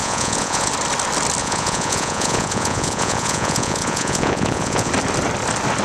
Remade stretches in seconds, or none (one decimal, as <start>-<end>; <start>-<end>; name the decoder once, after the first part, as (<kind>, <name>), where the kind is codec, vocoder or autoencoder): 0.0-0.7 (vocoder, Vocos); 1.4-4.9